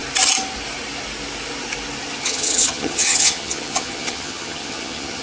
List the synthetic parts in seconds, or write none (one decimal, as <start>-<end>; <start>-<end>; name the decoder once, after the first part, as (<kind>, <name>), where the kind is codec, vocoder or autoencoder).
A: 2.2-5.2 (vocoder, HiFi-GAN)